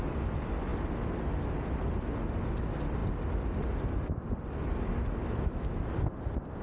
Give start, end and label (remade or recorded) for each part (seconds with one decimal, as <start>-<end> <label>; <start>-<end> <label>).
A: 0.0-6.6 recorded